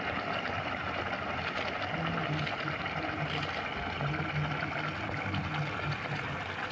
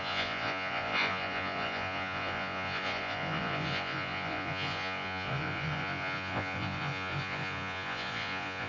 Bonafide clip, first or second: first